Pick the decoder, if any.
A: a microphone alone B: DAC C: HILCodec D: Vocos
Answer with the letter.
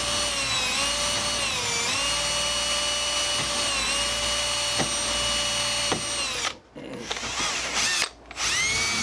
A